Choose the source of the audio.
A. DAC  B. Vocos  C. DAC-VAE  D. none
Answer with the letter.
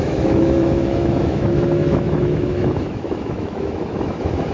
C